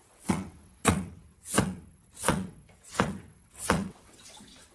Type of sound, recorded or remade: remade